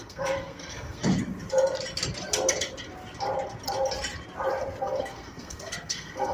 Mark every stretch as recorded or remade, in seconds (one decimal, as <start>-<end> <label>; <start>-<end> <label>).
0.0-1.0 remade; 1.0-4.8 recorded; 4.8-6.3 remade